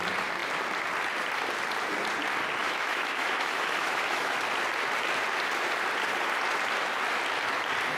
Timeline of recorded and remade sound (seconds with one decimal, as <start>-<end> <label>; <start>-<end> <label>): 0.0-2.6 recorded; 2.6-4.4 remade; 4.4-8.0 recorded